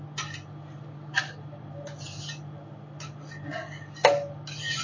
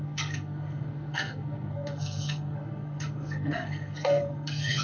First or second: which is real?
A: first